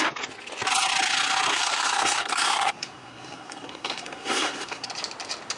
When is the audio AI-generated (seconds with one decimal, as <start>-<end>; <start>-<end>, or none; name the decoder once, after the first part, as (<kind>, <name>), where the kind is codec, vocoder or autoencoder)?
1.5-4.9 (codec, SNAC)